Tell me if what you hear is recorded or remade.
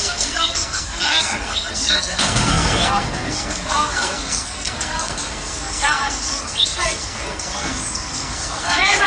remade